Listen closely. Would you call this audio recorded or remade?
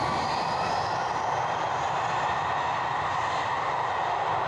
recorded